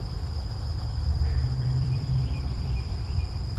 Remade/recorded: remade